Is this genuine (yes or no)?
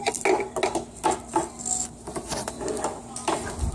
yes